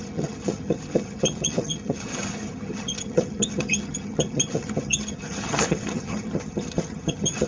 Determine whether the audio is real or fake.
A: fake